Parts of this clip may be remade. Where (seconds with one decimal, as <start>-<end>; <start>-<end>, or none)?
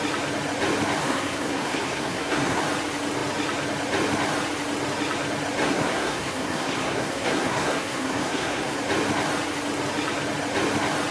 1.0-2.6; 5.6-8.8